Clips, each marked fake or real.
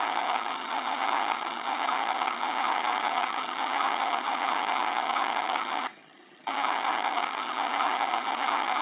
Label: fake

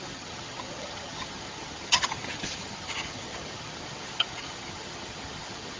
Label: fake